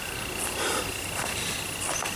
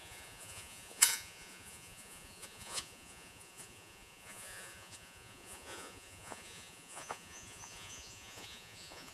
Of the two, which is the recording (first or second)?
first